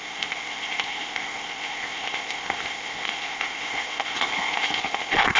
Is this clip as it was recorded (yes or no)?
no